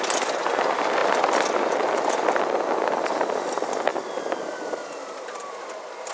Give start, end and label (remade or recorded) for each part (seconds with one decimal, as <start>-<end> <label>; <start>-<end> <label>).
0.0-6.1 recorded